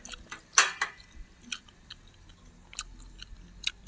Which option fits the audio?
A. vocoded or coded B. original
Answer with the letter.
B